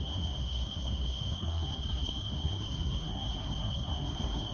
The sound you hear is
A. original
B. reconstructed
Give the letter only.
B